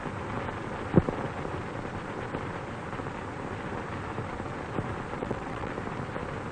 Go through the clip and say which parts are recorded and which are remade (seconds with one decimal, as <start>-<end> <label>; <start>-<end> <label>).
0.0-5.2 recorded; 5.2-5.7 remade; 5.7-6.5 recorded